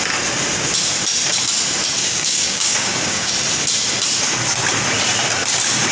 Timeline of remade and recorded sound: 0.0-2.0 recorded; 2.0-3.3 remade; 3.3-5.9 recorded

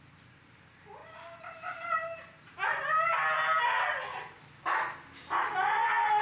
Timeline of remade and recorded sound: 0.0-6.2 recorded

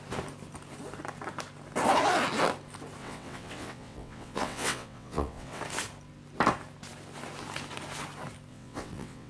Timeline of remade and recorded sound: 0.0-3.0 recorded; 3.0-5.6 remade; 5.6-8.5 recorded; 8.5-9.3 remade

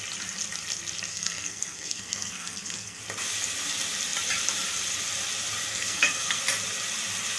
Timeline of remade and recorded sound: 0.0-1.1 recorded; 1.1-3.0 remade; 3.0-5.7 recorded; 5.7-6.4 remade; 6.4-7.4 recorded

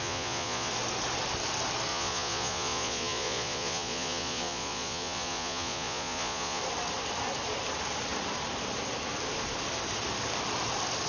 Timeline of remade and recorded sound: 0.0-0.7 remade; 0.7-1.9 recorded; 1.9-6.6 remade; 6.6-11.1 recorded